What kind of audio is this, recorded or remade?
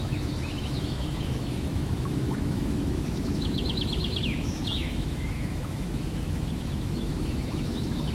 remade